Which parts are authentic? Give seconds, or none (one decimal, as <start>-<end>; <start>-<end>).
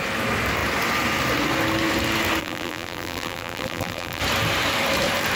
0.0-2.4; 4.2-5.4